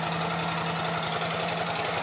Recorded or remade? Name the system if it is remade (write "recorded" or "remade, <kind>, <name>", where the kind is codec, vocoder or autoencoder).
recorded